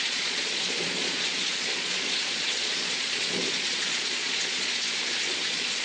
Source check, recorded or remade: remade